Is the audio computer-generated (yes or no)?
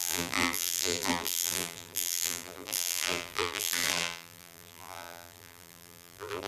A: yes